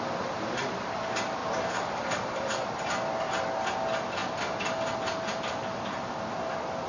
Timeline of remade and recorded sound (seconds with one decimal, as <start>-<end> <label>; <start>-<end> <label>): 0.0-1.4 recorded; 1.4-2.7 remade; 2.7-6.9 recorded